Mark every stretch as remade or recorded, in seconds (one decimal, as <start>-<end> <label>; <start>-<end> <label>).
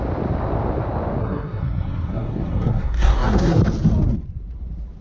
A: 0.0-1.2 recorded; 1.2-3.6 remade; 3.6-5.0 recorded